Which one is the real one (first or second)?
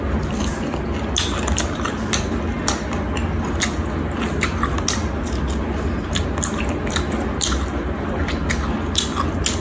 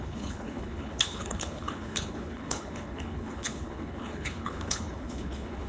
first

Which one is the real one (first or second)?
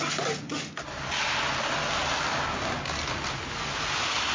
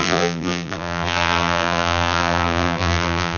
first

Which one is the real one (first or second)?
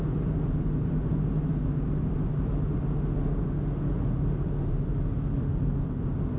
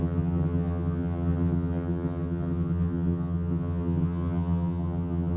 first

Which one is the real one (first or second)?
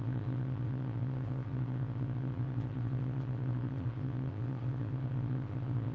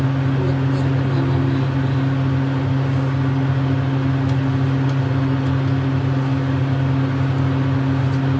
second